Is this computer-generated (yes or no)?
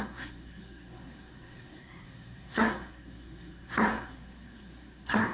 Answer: yes